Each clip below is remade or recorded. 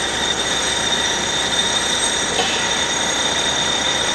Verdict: remade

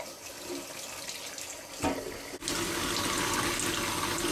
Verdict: recorded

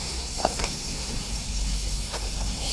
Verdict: remade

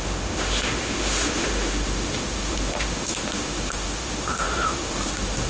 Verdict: remade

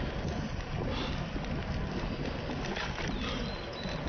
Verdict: recorded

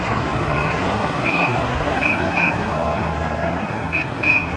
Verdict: remade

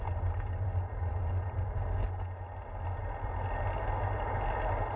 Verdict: recorded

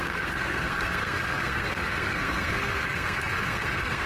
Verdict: remade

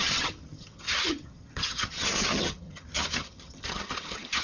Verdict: remade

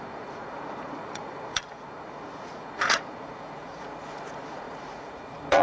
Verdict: remade